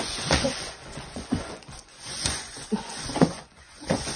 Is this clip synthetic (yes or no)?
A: yes